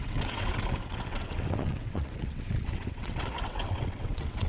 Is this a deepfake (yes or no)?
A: yes